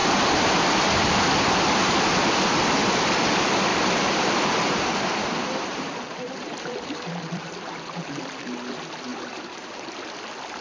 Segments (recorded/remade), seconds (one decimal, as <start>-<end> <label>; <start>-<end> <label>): 0.0-1.2 remade; 1.2-3.7 recorded; 3.7-8.2 remade; 8.2-9.1 recorded; 9.1-9.9 remade; 9.9-10.6 recorded